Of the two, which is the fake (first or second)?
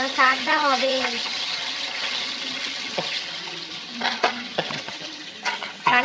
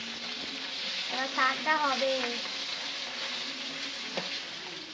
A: first